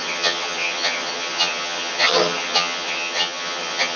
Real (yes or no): no